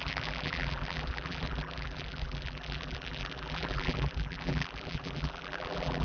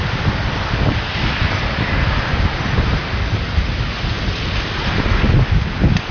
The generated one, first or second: first